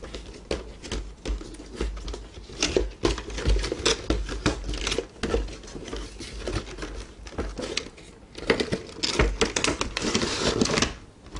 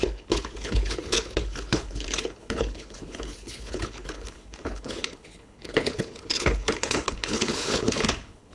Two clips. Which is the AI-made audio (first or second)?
second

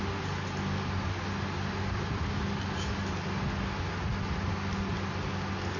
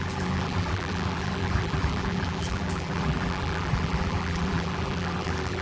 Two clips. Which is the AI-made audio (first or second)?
second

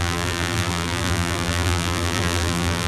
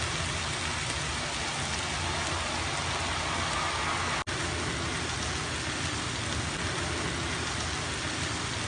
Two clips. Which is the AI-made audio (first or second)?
first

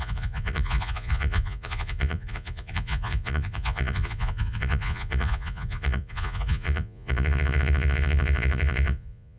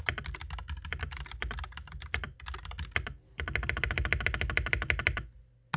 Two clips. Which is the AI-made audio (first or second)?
first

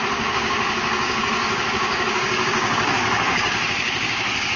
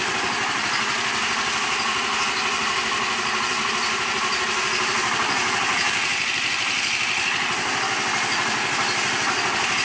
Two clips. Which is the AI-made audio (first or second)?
first